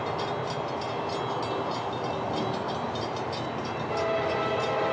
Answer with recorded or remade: recorded